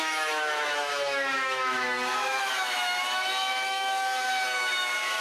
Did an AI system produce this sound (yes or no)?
yes